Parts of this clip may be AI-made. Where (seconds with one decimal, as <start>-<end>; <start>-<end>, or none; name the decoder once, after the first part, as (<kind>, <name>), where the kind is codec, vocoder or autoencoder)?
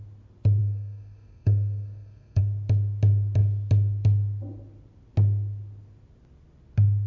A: 0.6-2.4 (codec, SNAC)